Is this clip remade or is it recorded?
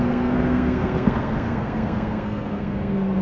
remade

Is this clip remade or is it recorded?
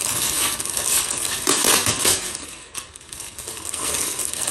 remade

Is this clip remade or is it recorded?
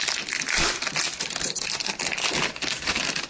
recorded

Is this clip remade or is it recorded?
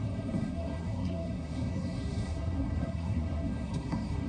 remade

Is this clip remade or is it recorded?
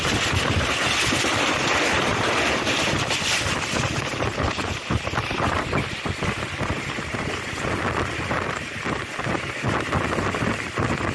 recorded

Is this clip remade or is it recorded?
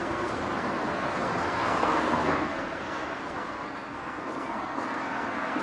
remade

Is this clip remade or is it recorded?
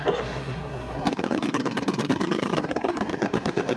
remade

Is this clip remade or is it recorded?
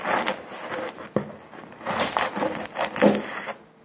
recorded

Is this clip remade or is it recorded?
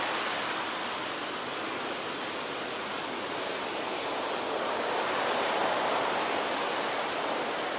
recorded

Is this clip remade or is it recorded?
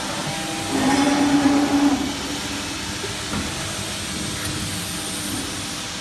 recorded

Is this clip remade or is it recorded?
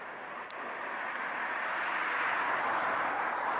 recorded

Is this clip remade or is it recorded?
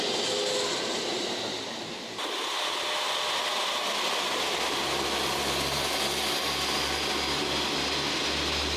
recorded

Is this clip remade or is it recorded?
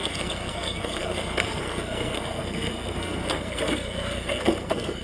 remade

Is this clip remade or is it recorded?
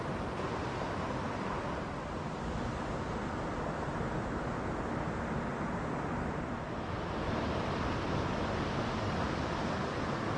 recorded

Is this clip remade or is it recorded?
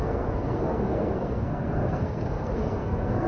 remade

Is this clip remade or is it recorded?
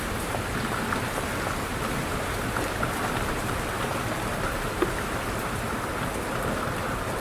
recorded